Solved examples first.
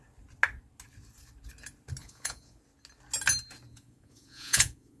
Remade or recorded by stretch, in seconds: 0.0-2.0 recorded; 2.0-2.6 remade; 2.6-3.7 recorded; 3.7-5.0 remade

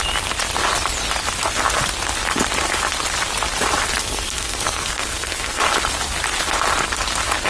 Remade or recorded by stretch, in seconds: 0.0-4.0 recorded; 4.0-5.6 remade; 5.6-7.5 recorded

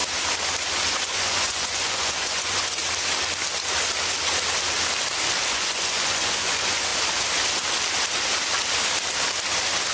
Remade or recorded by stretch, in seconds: 0.0-0.9 recorded; 0.9-2.8 remade; 2.8-5.5 recorded; 5.5-6.9 remade; 6.9-9.9 recorded

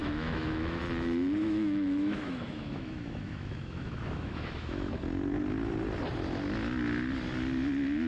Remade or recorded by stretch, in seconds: 0.0-0.8 remade; 0.8-1.4 recorded; 1.4-4.9 remade; 4.9-8.1 recorded

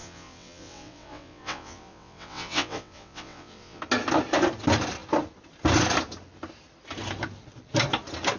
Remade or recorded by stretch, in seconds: 0.0-3.8 remade; 3.8-8.4 recorded

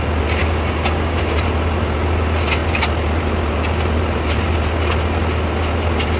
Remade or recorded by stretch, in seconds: 0.0-0.4 recorded; 0.4-1.2 remade; 1.2-6.2 recorded